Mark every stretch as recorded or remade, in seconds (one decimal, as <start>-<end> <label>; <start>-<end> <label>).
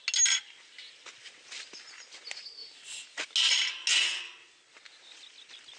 0.0-5.8 recorded